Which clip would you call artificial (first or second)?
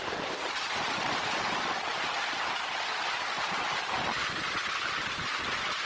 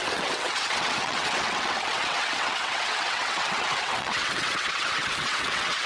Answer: second